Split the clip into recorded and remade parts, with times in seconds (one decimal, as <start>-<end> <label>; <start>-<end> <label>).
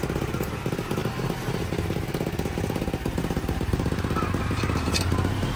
0.0-5.6 recorded